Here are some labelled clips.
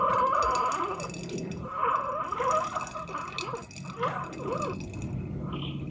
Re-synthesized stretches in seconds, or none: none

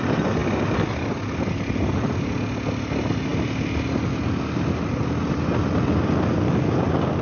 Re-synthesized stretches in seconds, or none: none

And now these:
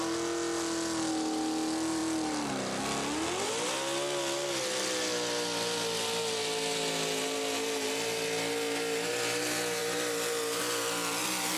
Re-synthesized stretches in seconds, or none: none

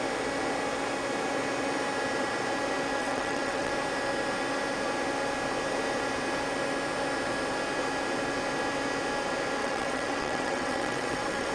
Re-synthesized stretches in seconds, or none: 3.0-3.7 (vocoder, WaveNeXt); 9.6-11.5

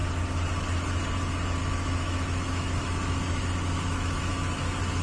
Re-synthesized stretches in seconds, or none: 1.6-4.6 (autoencoder, DAC-VAE)

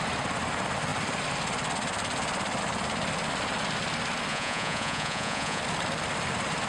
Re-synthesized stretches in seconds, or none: 4.3-5.6 (vocoder, Vocos)

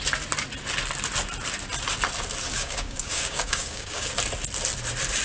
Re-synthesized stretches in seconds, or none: 2.5-4.1 (codec, DAC)

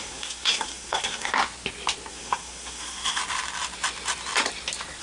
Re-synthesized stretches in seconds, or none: 0.0-1.3 (codec, SNAC); 2.1-3.2